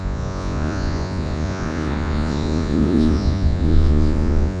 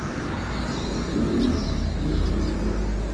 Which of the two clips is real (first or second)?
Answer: second